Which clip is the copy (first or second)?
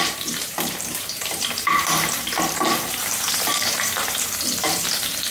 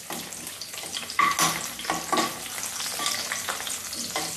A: first